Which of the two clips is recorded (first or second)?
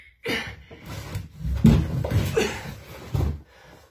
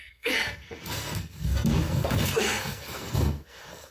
first